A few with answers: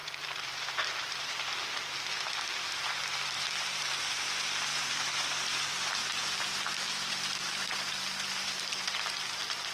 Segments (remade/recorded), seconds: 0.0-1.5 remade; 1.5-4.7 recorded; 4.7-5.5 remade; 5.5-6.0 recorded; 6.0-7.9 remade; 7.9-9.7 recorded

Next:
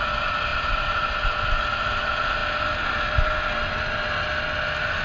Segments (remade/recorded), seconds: 0.0-0.5 recorded; 0.5-1.1 remade; 1.1-5.0 recorded

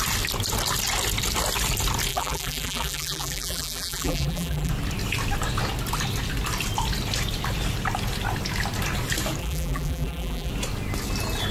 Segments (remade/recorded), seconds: 0.0-2.1 recorded; 2.1-4.7 remade; 4.7-9.4 recorded; 9.4-10.5 remade; 10.5-11.5 recorded

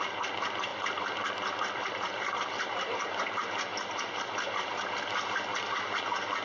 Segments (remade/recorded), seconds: 0.0-0.7 recorded; 0.7-2.3 remade; 2.3-3.7 recorded; 3.7-5.0 remade; 5.0-6.4 recorded